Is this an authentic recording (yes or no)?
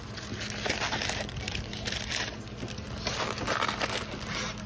yes